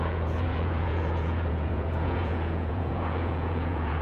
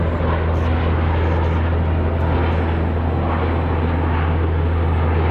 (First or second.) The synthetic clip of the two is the first